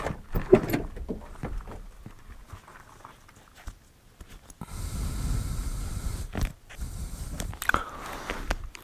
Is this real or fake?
real